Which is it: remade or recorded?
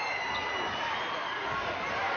recorded